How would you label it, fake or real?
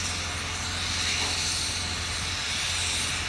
real